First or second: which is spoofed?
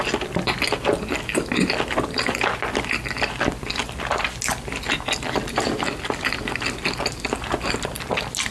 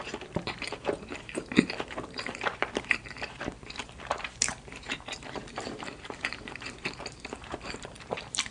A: second